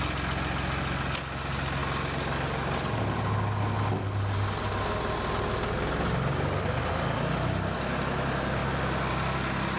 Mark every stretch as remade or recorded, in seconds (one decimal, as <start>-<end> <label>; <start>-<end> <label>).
0.0-9.8 recorded